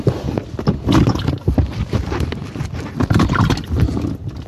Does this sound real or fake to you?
real